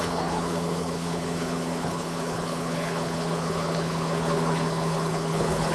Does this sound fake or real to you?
fake